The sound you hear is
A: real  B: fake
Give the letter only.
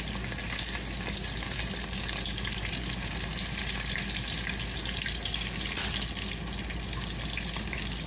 A